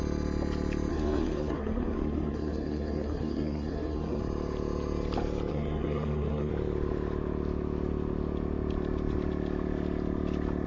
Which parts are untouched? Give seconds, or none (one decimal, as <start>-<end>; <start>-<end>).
0.0-0.9; 4.2-5.5; 6.5-10.7